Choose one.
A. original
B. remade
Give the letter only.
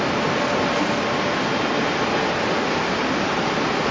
A